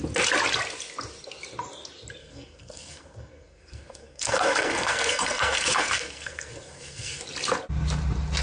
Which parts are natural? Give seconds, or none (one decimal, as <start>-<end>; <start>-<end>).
0.0-2.2; 7.2-8.4